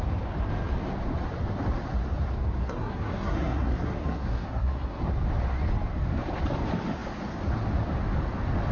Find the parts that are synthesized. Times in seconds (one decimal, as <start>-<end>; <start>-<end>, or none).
2.6-5.0

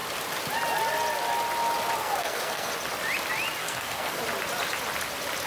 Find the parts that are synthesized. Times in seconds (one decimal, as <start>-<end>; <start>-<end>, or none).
2.0-2.7; 3.6-4.2